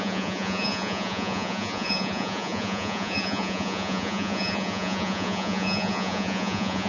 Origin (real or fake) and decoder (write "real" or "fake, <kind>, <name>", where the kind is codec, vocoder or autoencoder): fake, vocoder, Vocos